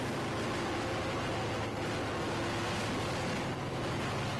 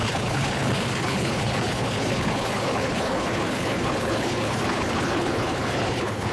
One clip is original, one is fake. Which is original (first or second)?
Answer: first